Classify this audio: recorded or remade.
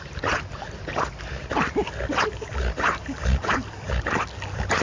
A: recorded